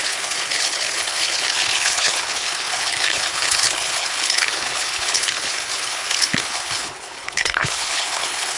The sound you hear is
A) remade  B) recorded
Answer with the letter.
A